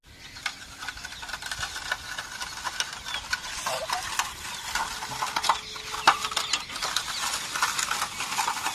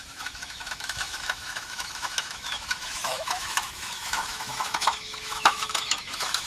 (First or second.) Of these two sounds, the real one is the first